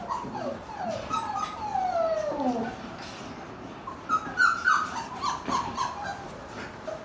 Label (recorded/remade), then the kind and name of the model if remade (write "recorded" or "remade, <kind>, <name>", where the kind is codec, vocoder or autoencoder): recorded